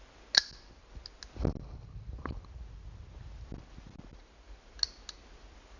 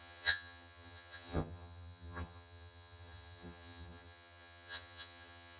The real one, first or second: first